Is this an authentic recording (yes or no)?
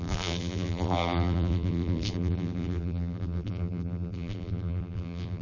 no